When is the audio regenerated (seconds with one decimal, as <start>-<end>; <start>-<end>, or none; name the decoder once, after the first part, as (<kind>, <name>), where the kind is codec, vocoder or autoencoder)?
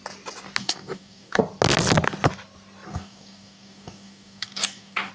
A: 0.6-1.4 (codec, DAC); 2.9-5.1